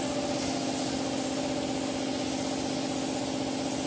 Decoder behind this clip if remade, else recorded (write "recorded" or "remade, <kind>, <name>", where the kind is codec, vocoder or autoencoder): recorded